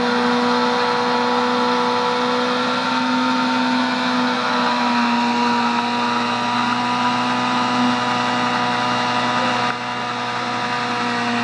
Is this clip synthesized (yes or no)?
no